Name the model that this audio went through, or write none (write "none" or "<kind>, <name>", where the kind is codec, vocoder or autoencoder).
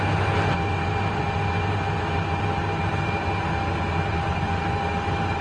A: none